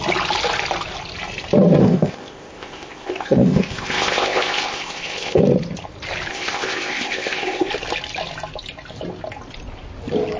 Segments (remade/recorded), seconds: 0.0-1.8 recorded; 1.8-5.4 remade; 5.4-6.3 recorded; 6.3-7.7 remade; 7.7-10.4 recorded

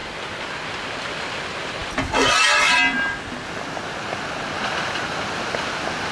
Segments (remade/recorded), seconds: 0.0-6.1 recorded

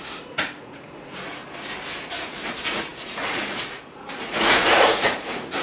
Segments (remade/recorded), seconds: 0.0-1.4 remade; 1.4-2.1 recorded; 2.1-5.6 remade

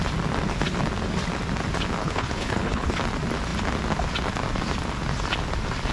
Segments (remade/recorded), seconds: 0.0-2.0 recorded; 2.0-2.9 remade; 2.9-5.9 recorded

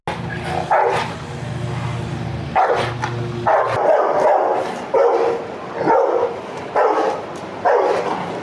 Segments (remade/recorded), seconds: 0.0-8.4 recorded

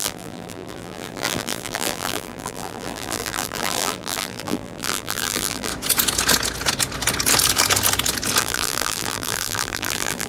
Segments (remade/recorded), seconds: 0.0-5.7 remade; 5.7-8.4 recorded; 8.4-10.3 remade

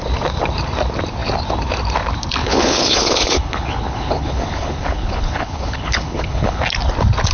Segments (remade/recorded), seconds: 0.0-2.4 recorded; 2.4-6.6 remade; 6.6-7.3 recorded